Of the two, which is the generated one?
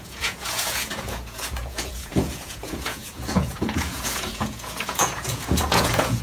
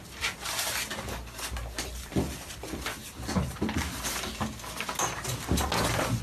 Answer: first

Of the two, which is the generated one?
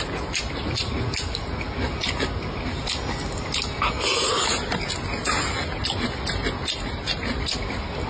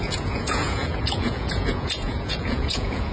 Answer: second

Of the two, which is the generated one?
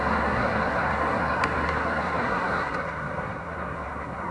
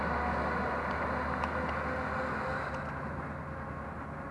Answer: first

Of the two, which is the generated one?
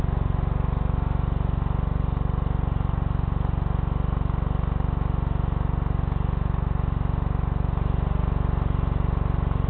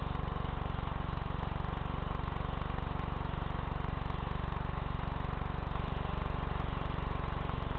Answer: second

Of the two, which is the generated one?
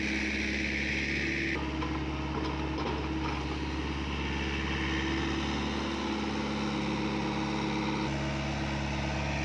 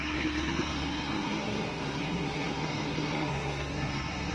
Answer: second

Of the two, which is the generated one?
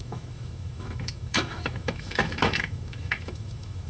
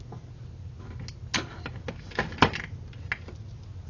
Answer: first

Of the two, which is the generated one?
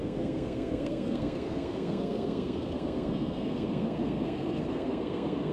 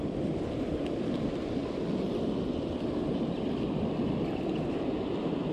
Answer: first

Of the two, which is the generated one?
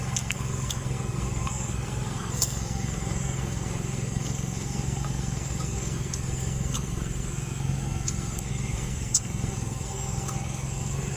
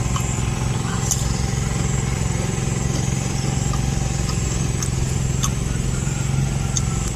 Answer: first